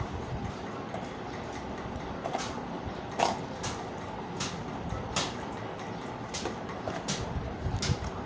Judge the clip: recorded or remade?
recorded